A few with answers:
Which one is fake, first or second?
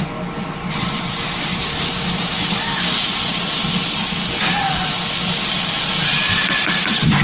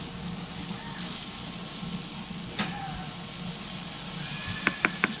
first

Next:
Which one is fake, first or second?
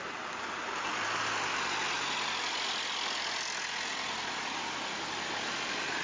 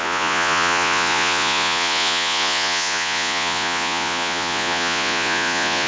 second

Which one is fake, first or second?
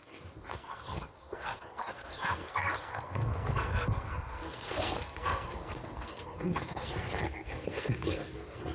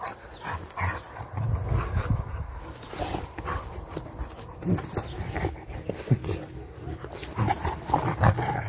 first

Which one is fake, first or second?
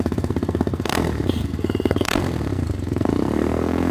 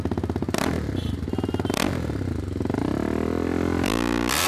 first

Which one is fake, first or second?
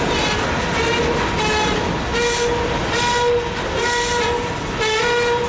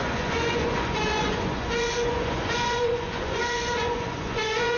second